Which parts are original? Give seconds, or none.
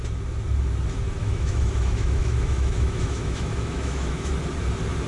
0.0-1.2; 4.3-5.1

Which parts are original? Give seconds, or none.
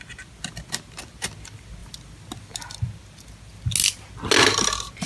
0.0-5.1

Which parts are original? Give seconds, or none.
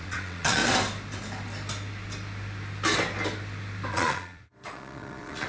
0.6-3.9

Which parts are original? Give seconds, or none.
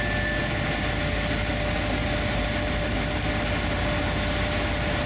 0.0-5.1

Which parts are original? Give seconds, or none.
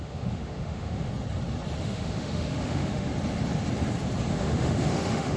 1.1-1.8; 3.1-4.3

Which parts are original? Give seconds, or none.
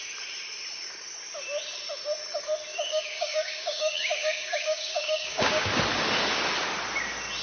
0.0-2.7; 5.7-7.4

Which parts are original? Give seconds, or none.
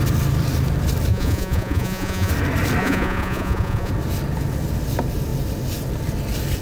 0.0-1.1; 2.3-2.8; 3.9-6.6